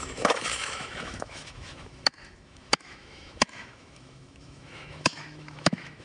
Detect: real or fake fake